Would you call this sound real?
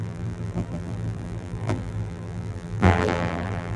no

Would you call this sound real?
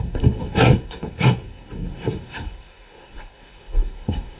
no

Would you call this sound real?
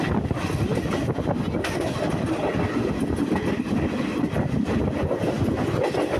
yes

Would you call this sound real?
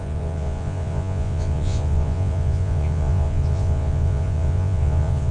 no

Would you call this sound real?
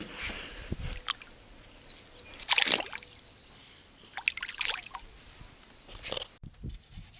yes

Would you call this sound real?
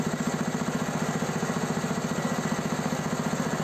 yes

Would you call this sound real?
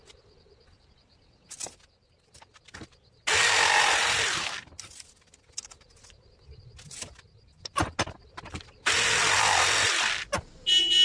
yes